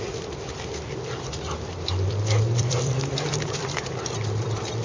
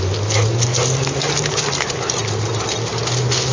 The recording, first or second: second